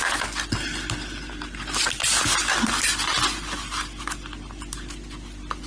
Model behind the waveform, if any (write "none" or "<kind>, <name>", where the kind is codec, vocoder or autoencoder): none